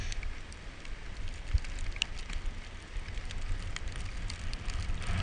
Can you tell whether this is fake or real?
real